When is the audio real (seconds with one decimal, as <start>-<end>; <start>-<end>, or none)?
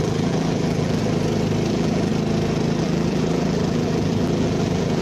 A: 1.0-1.7; 2.1-2.8